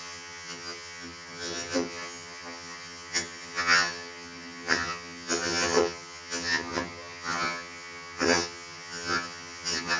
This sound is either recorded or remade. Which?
remade